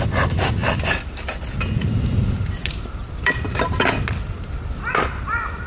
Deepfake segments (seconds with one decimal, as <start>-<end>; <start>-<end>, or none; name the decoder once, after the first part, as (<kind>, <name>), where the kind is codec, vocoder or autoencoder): 0.6-4.0 (vocoder, BigVGAN v2)

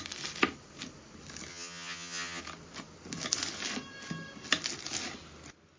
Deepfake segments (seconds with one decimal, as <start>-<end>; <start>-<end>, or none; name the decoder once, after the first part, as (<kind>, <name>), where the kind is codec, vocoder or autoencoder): 1.5-2.4 (vocoder, HiFi-GAN)

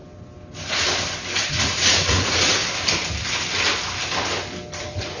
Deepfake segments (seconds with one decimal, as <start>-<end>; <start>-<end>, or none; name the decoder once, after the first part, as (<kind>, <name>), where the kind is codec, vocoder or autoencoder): 1.5-2.6 (vocoder, Vocos); 4.8-5.2

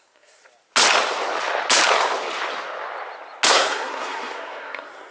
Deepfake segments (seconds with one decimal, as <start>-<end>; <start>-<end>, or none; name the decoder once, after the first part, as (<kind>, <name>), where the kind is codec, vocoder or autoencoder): 0.0-0.4 (codec, SNAC); 3.5-5.1

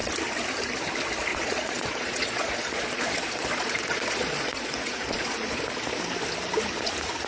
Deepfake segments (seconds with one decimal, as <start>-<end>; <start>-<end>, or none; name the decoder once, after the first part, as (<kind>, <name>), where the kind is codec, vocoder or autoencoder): 1.3-5.6 (vocoder, Vocos)